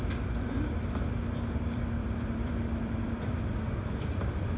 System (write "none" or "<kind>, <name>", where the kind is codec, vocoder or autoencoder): vocoder, BigVGAN v2